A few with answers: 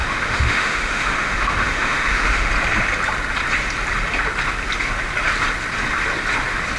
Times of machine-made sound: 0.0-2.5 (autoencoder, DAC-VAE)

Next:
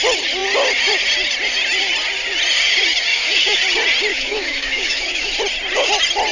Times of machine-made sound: 3.1-3.6 (autoencoder, DAC-VAE); 4.1-5.3

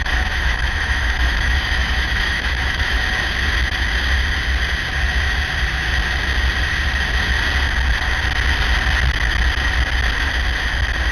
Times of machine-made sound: 0.0-3.0 (autoencoder, DAC-VAE)

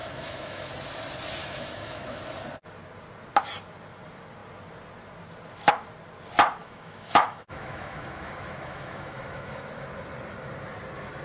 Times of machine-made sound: 0.0-0.7 (autoencoder, DAC-VAE); 1.4-2.2; 6.6-9.7

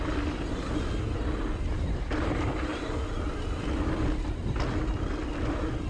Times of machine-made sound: none

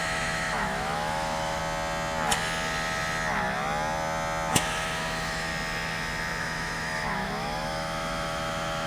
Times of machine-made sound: 0.0-1.6 (autoencoder, DAC-VAE); 4.5-5.5; 6.4-8.9

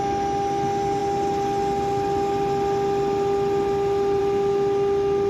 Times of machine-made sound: none